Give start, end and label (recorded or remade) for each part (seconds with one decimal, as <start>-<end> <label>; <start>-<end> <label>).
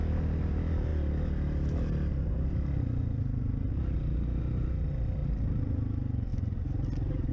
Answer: 0.0-7.3 recorded